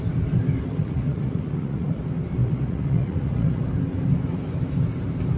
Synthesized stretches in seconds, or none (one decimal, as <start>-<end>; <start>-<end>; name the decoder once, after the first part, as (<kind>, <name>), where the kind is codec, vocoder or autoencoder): 0.8-2.0 (vocoder, Vocos); 2.4-3.6